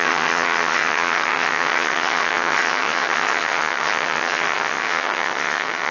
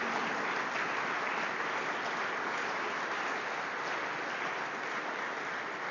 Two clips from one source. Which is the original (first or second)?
second